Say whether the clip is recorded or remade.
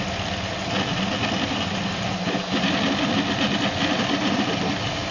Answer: recorded